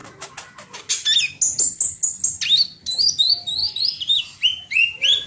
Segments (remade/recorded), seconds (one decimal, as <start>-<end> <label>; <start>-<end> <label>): 0.0-3.2 recorded; 3.2-5.3 remade